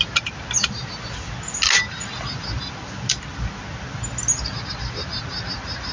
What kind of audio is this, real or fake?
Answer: real